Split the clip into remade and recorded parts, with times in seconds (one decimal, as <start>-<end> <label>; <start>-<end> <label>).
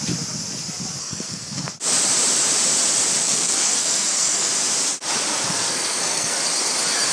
0.0-1.0 recorded; 1.0-1.7 remade; 1.7-3.2 recorded; 3.2-4.5 remade; 4.5-5.3 recorded; 5.3-6.4 remade; 6.4-7.1 recorded